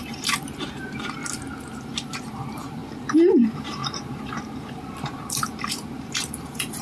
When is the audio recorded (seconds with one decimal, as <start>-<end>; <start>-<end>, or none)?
1.2-1.8; 2.8-3.3